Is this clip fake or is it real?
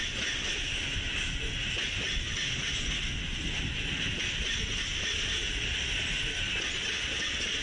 real